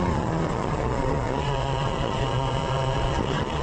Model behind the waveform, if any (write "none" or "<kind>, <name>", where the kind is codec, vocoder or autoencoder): vocoder, Vocos